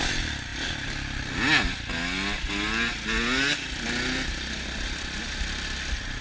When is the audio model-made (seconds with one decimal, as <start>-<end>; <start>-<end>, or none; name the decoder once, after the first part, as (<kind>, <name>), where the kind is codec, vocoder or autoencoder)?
none